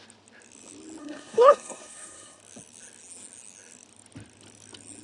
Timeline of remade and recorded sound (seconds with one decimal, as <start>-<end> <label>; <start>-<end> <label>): 0.0-1.0 recorded; 1.0-2.4 remade; 2.4-5.0 recorded